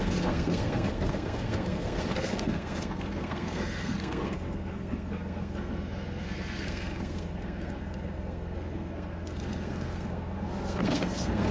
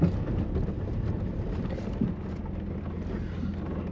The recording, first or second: second